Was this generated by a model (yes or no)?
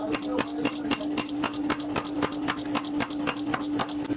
no